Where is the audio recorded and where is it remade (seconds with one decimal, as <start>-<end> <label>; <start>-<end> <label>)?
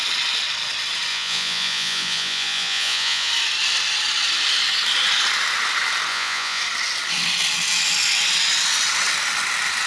0.0-1.1 recorded; 1.1-3.3 remade; 3.3-6.1 recorded; 6.1-6.6 remade; 6.6-9.9 recorded